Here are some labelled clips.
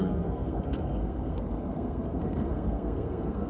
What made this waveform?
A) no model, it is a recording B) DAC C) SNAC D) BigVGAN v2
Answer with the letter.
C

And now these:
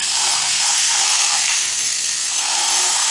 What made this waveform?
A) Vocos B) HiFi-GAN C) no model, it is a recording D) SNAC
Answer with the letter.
D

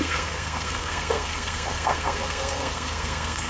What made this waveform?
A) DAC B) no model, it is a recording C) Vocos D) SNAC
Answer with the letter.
D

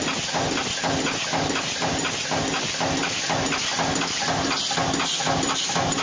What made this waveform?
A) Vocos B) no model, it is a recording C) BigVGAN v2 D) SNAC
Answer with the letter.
B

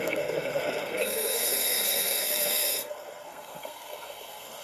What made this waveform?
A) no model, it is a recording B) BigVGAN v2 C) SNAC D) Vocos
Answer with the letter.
C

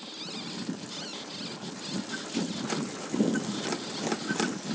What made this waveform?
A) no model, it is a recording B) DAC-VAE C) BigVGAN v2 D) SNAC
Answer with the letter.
A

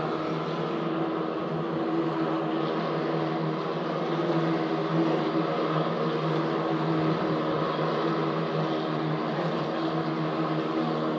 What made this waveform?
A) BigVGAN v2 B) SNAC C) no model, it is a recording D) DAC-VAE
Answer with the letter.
C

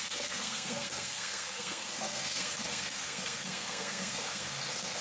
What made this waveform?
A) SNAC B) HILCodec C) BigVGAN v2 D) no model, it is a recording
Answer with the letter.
A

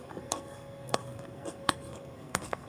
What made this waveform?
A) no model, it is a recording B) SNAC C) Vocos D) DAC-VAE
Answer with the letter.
B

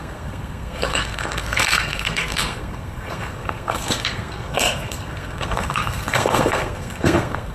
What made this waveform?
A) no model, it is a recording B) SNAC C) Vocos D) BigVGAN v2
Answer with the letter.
B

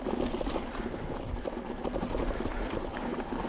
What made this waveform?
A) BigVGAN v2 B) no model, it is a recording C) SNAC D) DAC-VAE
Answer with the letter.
B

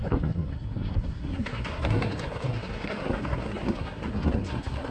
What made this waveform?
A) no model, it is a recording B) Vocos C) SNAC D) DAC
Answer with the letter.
C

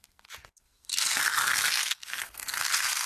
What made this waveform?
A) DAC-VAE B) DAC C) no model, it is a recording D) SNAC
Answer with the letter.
D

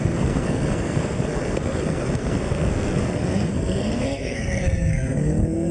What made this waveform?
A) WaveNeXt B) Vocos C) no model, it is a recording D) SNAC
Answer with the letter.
D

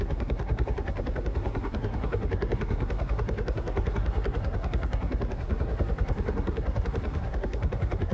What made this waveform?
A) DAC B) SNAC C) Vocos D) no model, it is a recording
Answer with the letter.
B